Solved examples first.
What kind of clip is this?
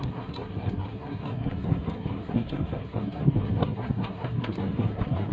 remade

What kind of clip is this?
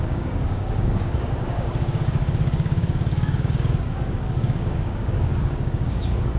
remade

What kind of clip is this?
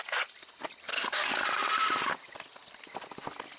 recorded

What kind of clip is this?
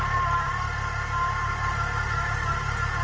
recorded